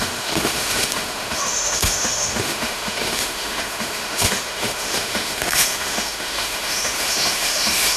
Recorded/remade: remade